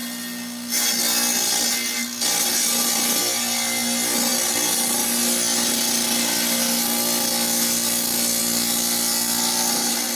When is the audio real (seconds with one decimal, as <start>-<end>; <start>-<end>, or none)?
0.0-10.2